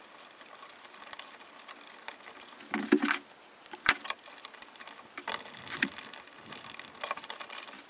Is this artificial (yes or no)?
yes